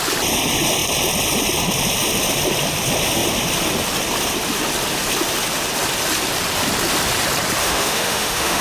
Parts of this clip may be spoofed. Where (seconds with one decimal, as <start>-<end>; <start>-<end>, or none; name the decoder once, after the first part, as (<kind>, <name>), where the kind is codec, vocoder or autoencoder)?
7.6-8.6 (autoencoder, DAC-VAE)